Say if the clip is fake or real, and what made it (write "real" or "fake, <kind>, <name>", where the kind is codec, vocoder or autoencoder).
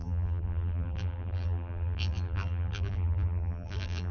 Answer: fake, vocoder, BigVGAN v2